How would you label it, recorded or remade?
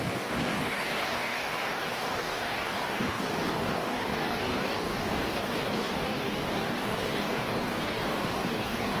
remade